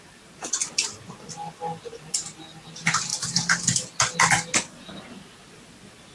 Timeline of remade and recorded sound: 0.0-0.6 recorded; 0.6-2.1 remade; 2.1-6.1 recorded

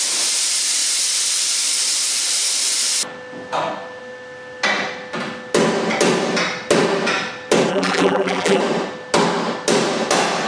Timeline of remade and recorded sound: 0.0-7.7 recorded; 7.7-8.6 remade; 8.6-10.5 recorded

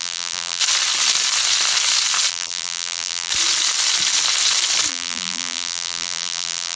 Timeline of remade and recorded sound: 0.0-0.6 remade; 0.6-2.3 recorded; 2.3-3.3 remade; 3.3-4.9 recorded; 4.9-6.8 remade

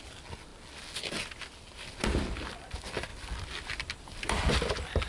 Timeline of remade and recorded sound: 0.0-0.5 remade; 0.5-2.0 recorded; 2.0-5.1 remade

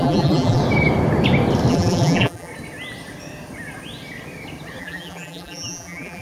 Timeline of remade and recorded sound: 0.0-0.6 remade; 0.6-1.7 recorded; 1.7-2.5 remade; 2.5-4.8 recorded; 4.8-6.2 remade

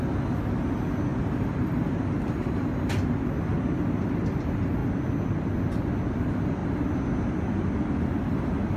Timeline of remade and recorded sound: 0.0-1.1 recorded; 1.1-2.0 remade; 2.0-8.8 recorded

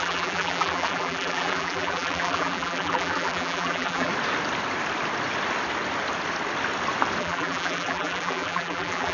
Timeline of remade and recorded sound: 0.0-4.1 remade; 4.1-7.2 recorded; 7.2-9.1 remade